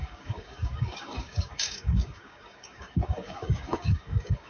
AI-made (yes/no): yes